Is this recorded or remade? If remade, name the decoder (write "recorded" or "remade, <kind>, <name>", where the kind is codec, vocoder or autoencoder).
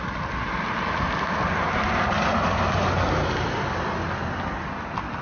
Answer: recorded